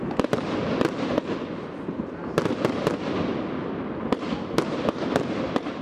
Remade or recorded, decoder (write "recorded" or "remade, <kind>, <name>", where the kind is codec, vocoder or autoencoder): recorded